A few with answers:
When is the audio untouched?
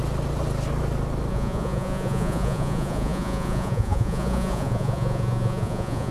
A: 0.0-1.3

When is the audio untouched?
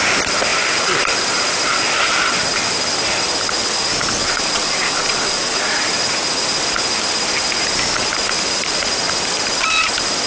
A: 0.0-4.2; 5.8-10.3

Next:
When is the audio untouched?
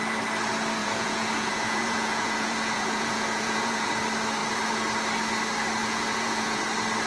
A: 0.0-0.8; 3.9-5.8; 6.6-7.1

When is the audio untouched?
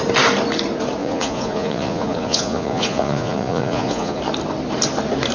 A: 0.0-1.0; 4.2-5.3